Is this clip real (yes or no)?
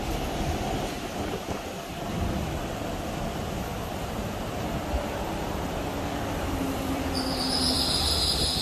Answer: yes